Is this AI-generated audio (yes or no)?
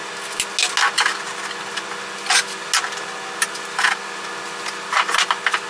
no